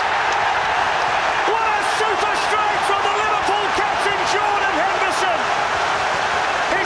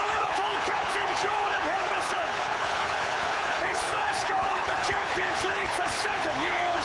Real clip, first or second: first